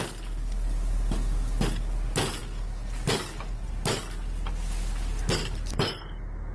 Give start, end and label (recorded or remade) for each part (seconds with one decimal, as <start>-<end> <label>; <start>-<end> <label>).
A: 0.0-6.5 recorded